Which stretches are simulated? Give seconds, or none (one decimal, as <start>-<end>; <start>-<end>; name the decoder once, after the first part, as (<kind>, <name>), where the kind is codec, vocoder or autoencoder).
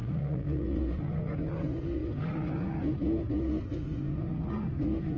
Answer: 0.0-0.8 (vocoder, Vocos)